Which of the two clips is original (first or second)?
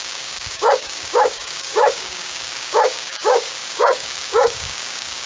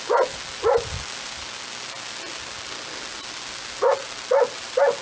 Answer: second